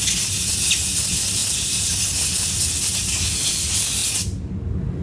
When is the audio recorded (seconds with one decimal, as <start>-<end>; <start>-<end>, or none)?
0.0-5.0